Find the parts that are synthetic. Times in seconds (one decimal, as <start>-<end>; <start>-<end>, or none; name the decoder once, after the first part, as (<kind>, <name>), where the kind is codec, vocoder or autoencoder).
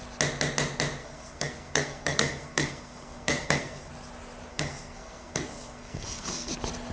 1.0-3.9 (codec, SNAC); 4.5-6.5